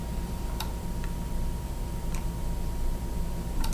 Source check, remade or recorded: remade